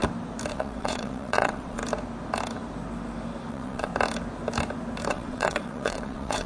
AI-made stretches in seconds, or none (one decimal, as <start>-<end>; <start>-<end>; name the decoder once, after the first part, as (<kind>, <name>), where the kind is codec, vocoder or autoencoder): 0.5-1.8 (vocoder, WaveNeXt); 3.5-3.9; 5.1-6.5